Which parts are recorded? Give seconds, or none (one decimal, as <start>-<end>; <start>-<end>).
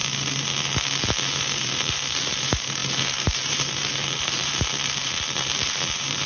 0.0-1.4